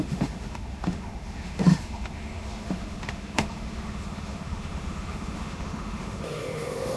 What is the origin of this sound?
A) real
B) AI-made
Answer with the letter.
B